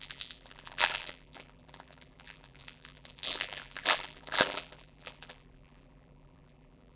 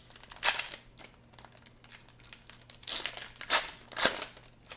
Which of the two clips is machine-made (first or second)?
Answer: first